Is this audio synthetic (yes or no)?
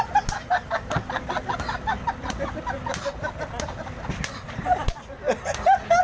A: no